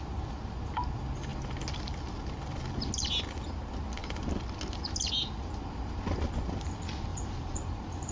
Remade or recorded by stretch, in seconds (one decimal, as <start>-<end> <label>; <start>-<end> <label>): 0.0-7.1 recorded; 7.1-8.1 remade